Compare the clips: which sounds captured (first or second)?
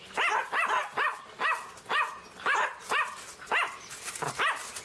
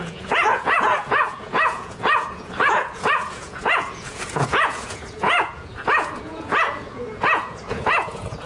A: first